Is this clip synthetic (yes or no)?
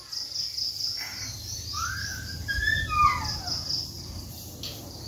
no